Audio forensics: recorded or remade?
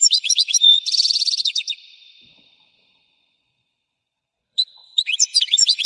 remade